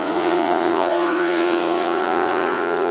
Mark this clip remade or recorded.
remade